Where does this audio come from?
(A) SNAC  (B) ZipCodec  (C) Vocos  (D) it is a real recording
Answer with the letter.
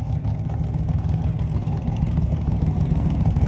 A